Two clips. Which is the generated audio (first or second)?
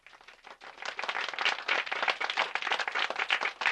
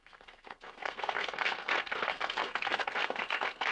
second